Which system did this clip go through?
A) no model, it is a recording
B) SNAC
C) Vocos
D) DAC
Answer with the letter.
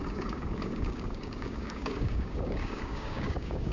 D